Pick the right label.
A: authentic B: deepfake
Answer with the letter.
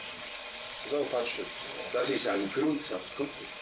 B